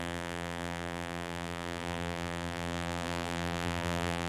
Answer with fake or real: fake